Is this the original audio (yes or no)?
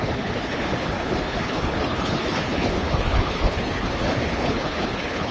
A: no